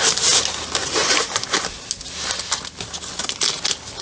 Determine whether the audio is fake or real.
real